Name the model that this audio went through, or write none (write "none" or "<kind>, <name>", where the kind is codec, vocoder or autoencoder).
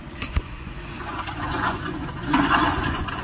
vocoder, Vocos